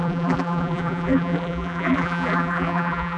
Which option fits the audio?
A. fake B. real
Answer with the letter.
A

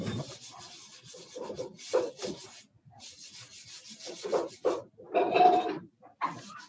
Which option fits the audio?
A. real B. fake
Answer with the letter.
A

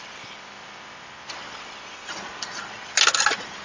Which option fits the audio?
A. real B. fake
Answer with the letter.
A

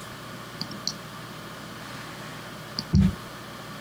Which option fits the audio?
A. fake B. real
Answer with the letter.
B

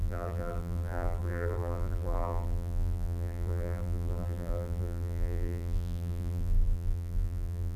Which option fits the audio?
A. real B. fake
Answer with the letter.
B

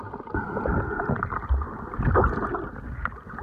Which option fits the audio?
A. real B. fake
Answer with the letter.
A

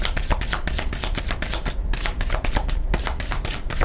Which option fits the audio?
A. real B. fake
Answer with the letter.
A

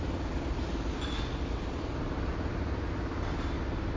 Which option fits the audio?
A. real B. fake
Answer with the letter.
A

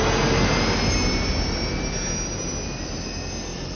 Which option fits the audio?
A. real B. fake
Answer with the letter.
A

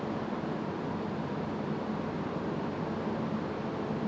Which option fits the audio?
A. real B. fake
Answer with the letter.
B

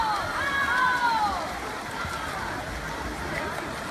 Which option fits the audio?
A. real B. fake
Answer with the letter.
A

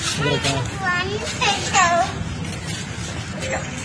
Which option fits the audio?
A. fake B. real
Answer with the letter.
B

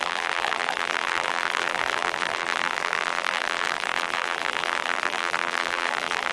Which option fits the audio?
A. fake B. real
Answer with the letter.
A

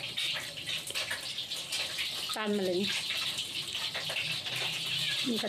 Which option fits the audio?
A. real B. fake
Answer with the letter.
B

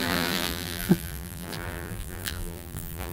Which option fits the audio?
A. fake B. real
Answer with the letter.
A